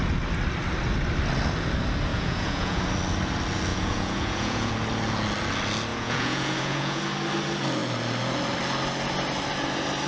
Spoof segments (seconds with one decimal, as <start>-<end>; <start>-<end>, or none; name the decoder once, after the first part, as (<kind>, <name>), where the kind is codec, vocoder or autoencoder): 2.1-2.8 (vocoder, Vocos); 3.7-4.7; 5.9-7.0